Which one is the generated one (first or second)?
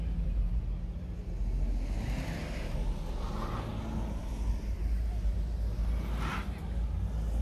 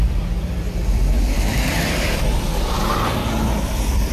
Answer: second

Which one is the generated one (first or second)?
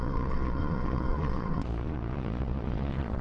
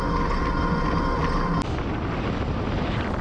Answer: first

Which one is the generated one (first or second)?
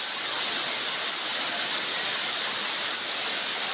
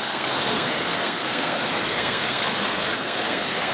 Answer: second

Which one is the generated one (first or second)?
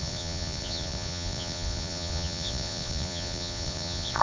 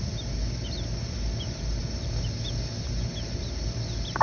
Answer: first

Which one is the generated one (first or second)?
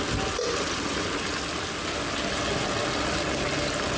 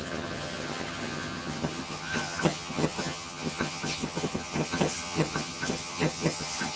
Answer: second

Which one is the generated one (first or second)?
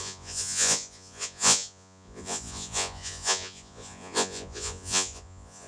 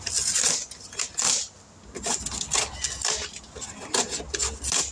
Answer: first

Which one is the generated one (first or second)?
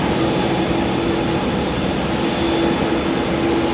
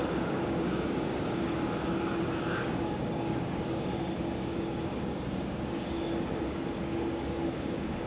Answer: second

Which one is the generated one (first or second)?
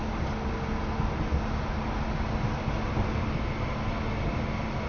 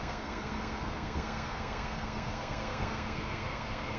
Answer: second